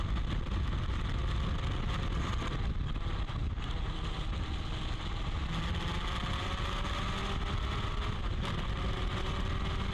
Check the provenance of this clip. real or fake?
real